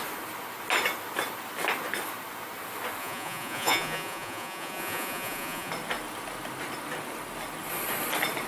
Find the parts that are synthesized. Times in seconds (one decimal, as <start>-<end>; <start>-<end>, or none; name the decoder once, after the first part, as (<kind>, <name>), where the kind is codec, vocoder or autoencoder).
3.0-5.7 (vocoder, Vocos)